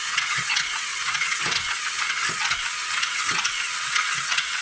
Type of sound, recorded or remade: remade